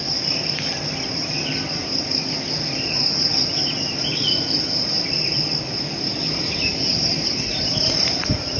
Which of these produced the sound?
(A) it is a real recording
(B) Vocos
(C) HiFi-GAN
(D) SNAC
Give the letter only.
A